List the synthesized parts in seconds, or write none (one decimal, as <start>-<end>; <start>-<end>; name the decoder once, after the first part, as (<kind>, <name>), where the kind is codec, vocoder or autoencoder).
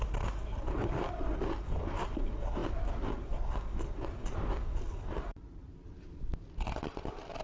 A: none